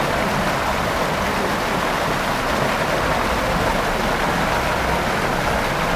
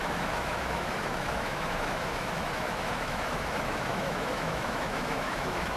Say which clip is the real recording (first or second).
first